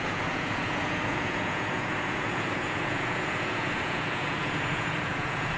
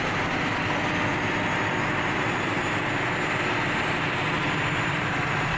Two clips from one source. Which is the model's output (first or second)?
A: first